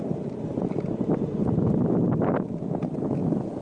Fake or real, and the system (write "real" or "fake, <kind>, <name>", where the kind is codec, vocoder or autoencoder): real